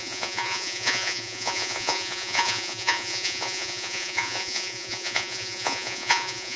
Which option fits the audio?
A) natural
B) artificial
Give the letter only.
B